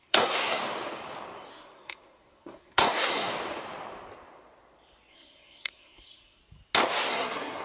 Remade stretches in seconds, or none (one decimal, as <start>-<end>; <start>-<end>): 0.0-0.6; 1.5-3.3; 5.1-6.4; 7.1-7.6